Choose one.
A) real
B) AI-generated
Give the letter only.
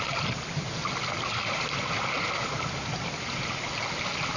A